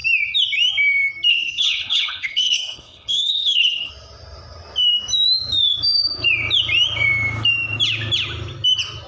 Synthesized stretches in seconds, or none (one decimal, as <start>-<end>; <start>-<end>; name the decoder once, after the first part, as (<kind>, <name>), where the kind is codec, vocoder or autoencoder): 1.3-3.9 (codec, HILCodec)